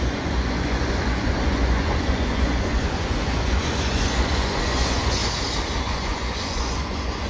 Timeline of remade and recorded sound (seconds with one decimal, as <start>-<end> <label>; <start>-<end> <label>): 0.0-5.2 remade; 5.2-5.8 recorded; 5.8-7.3 remade